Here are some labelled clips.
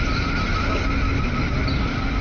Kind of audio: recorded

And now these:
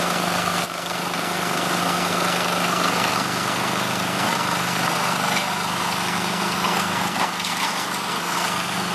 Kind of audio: remade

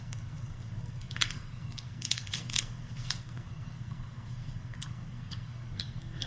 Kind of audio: remade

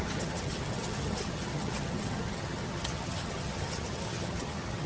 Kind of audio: remade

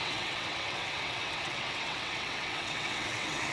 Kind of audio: remade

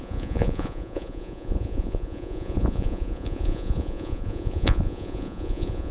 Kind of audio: remade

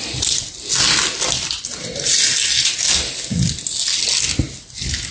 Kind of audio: recorded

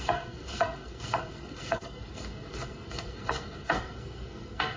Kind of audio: remade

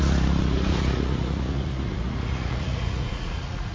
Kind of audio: remade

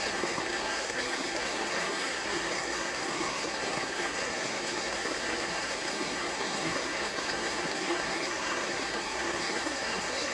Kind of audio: remade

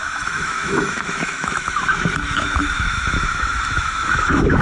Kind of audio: remade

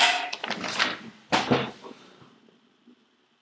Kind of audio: recorded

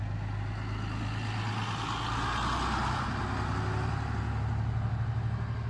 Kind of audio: recorded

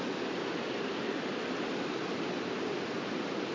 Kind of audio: recorded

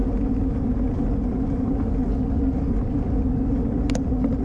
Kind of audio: recorded